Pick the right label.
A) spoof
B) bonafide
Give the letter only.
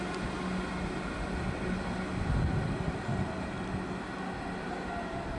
B